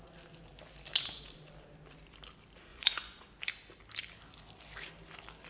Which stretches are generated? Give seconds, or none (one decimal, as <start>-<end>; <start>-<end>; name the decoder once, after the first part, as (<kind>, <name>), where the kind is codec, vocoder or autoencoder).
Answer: 2.7-3.3 (vocoder, Vocos)